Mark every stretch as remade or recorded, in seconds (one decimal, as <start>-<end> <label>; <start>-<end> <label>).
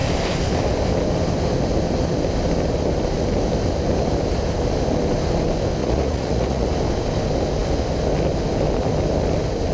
0.0-5.8 recorded; 5.8-6.7 remade; 6.7-9.7 recorded